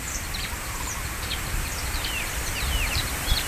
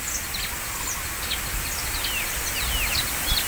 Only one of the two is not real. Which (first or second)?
first